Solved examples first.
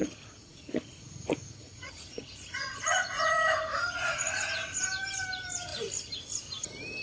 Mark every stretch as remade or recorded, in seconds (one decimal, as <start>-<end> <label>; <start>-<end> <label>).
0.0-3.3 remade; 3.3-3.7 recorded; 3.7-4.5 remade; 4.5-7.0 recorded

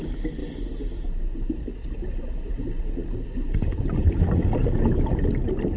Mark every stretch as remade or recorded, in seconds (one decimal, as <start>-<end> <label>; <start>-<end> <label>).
0.0-5.8 recorded

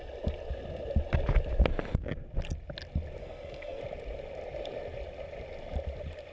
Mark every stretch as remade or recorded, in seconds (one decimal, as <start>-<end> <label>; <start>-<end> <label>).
0.0-3.2 recorded; 3.2-3.8 remade; 3.8-6.3 recorded

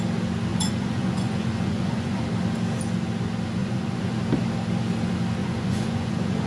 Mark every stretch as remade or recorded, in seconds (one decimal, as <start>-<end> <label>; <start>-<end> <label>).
0.0-0.5 recorded; 0.5-2.2 remade; 2.2-3.6 recorded; 3.6-4.2 remade; 4.2-5.4 recorded; 5.4-6.5 remade

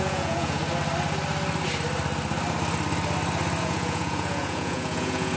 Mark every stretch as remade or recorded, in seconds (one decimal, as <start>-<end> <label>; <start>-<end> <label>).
0.0-0.6 remade; 0.6-3.6 recorded; 3.6-5.4 remade

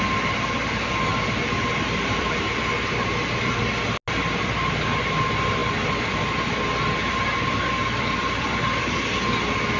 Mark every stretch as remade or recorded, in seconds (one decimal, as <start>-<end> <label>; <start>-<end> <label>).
0.0-9.8 recorded